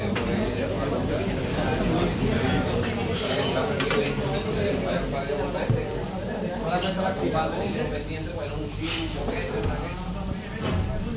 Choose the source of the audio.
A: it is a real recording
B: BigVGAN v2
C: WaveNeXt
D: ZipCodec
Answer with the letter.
A